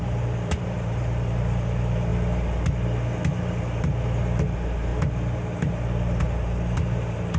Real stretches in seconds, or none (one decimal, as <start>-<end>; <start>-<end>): 2.1-4.4; 4.9-5.7